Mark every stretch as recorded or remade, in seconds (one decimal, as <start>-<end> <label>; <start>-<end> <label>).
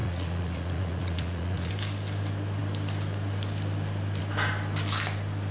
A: 0.0-1.7 remade; 1.7-5.5 recorded